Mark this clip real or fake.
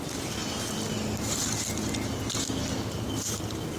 real